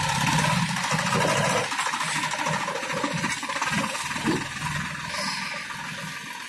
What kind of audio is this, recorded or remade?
recorded